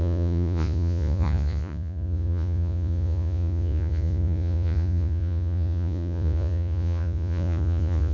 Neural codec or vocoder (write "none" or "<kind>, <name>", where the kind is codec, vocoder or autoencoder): vocoder, Vocos